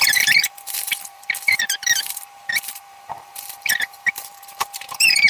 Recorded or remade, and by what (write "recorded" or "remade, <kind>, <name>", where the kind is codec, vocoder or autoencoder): remade, vocoder, BigVGAN v2